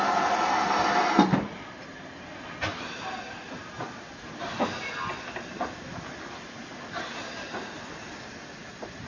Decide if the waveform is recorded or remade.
recorded